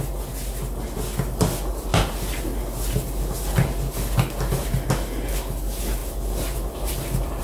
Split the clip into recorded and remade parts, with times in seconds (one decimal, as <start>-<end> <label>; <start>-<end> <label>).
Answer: 0.0-6.0 recorded; 6.0-7.4 remade